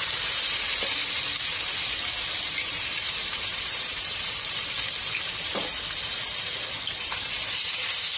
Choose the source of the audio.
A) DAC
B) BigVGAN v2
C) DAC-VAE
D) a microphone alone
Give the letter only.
B